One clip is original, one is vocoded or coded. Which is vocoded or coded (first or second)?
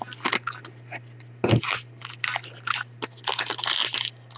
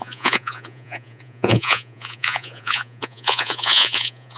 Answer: second